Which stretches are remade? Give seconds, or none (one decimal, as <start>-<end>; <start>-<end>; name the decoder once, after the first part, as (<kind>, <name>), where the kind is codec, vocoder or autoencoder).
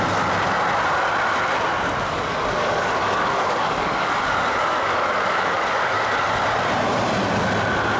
2.1-6.1 (codec, DAC)